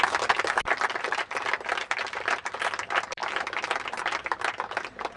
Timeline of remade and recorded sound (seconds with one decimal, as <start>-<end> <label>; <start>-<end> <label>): 0.0-5.2 recorded